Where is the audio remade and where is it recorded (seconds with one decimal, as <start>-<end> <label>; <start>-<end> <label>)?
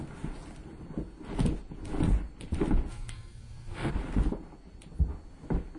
0.0-2.9 recorded; 2.9-3.9 remade; 3.9-5.8 recorded